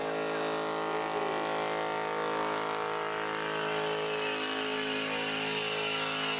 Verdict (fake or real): real